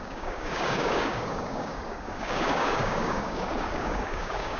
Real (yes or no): no